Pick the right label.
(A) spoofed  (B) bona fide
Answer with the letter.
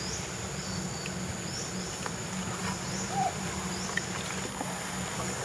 B